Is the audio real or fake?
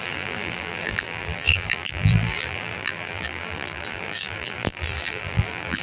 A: fake